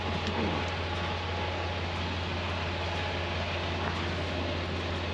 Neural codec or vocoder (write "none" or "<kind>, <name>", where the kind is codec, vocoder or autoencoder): none